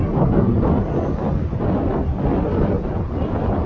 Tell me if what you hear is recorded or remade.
recorded